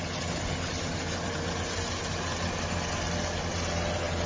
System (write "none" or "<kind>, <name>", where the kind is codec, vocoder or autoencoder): none